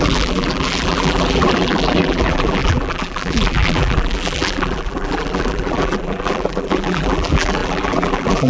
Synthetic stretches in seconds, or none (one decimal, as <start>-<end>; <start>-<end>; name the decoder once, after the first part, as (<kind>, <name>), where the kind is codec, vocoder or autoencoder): 0.0-8.5 (vocoder, BigVGAN v2)